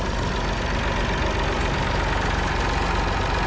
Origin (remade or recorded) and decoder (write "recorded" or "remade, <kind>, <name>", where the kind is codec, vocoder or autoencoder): recorded